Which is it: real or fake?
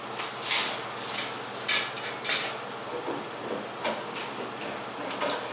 real